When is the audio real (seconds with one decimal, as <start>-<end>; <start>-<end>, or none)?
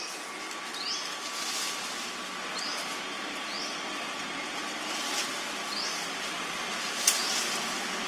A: 0.0-8.1